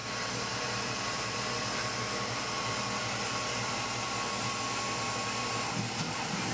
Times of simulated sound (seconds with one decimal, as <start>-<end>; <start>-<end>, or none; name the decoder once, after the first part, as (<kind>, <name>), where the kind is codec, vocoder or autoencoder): 0.0-1.0 (vocoder, BigVGAN v2)